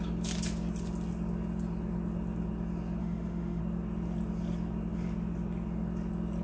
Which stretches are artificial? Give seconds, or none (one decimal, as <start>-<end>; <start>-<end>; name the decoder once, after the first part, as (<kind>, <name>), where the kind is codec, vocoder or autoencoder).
3.0-3.6 (autoencoder, DAC-VAE)

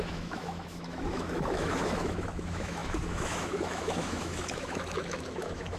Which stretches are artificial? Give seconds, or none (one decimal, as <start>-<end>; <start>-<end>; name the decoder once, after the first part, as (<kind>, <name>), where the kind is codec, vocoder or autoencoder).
0.0-5.8 (autoencoder, DAC-VAE)